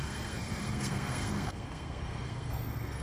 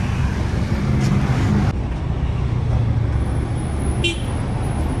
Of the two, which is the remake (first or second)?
first